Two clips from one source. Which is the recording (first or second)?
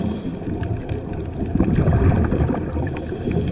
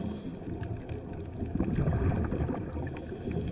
second